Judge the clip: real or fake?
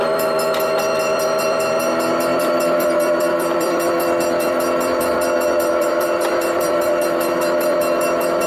fake